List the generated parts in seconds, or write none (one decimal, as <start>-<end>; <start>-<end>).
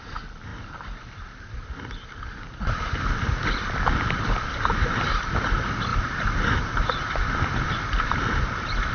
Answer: none